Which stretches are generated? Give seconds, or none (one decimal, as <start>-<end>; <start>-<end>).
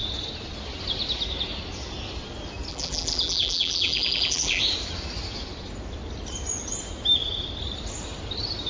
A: 2.7-4.6